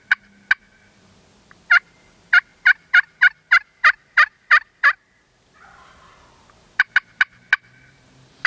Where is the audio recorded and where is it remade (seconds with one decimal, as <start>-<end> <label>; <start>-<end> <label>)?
0.0-8.5 recorded